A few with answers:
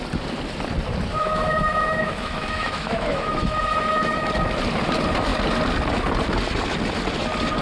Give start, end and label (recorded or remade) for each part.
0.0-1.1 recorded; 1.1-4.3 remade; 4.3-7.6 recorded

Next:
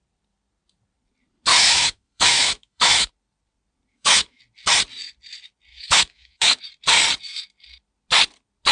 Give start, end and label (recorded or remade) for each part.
0.0-1.5 recorded; 1.5-3.1 remade; 3.1-3.9 recorded; 3.9-4.4 remade; 4.4-5.7 recorded; 5.7-6.6 remade; 6.6-8.7 recorded

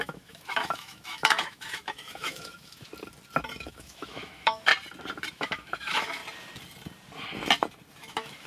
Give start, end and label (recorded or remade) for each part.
0.0-2.9 remade; 2.9-3.6 recorded; 3.6-4.7 remade; 4.7-5.3 recorded; 5.3-6.2 remade; 6.2-8.0 recorded; 8.0-8.5 remade

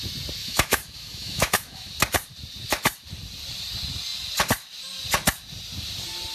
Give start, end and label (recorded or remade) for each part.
0.0-0.4 recorded; 0.4-1.9 remade; 1.9-6.3 recorded

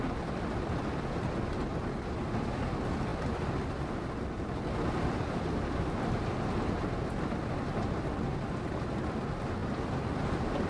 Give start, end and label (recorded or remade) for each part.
0.0-10.7 recorded

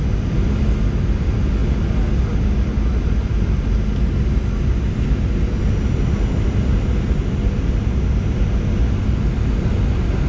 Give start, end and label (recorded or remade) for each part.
0.0-10.3 recorded